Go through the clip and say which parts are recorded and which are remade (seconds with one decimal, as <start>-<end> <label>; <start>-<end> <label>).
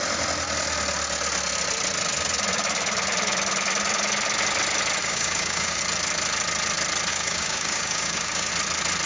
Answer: 0.0-5.0 recorded; 5.0-5.8 remade; 5.8-7.1 recorded; 7.1-8.5 remade; 8.5-9.1 recorded